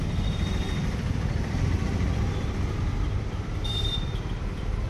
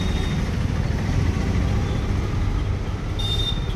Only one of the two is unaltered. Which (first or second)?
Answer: second